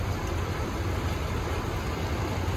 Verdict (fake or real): real